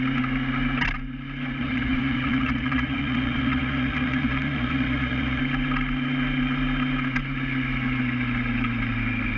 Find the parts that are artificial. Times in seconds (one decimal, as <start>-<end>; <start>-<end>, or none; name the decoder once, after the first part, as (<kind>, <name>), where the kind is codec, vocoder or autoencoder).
1.6-5.4 (vocoder, Vocos)